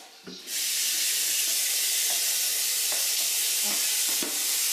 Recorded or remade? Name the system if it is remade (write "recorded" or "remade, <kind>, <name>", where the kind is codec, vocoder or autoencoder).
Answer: recorded